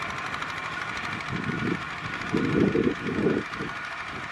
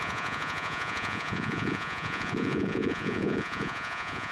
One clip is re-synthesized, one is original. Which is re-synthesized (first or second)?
second